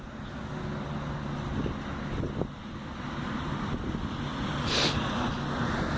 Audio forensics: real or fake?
real